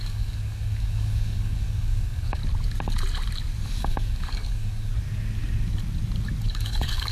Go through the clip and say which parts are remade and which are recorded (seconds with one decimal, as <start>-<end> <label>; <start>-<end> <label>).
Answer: 0.0-2.4 remade; 2.4-3.8 recorded; 3.8-4.9 remade; 4.9-6.5 recorded; 6.5-7.1 remade